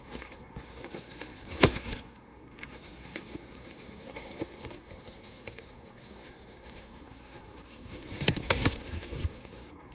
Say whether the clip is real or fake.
fake